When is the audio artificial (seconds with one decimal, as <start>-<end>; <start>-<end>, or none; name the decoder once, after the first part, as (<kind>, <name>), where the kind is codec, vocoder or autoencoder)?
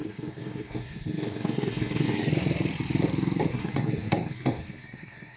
0.0-2.3 (codec, SNAC); 3.5-5.4